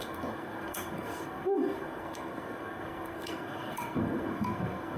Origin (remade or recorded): remade